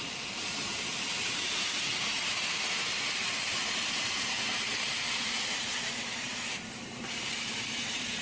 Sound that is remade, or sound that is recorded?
remade